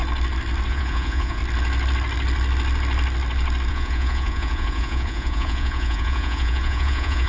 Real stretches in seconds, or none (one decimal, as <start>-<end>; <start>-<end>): 0.0-0.7; 1.4-3.7